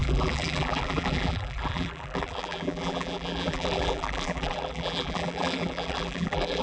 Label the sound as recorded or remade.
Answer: remade